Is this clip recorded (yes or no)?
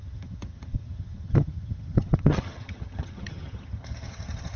no